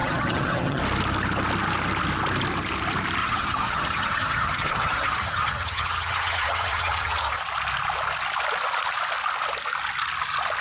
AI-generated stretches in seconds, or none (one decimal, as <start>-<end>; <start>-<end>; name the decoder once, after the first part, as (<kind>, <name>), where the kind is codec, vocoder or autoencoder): 0.0-0.8 (vocoder, HiFi-GAN); 3.2-7.4